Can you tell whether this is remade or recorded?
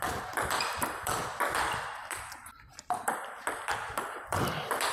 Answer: recorded